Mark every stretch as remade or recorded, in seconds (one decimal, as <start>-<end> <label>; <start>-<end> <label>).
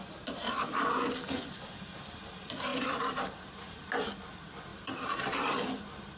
0.0-1.7 remade; 1.7-2.7 recorded; 2.7-3.9 remade; 3.9-4.7 recorded; 4.7-5.6 remade; 5.6-6.2 recorded